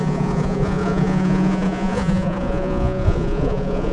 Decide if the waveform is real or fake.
fake